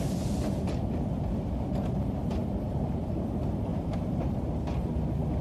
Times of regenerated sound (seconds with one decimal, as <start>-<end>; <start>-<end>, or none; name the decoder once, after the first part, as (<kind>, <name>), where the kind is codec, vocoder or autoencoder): 3.7-4.5 (vocoder, BigVGAN v2)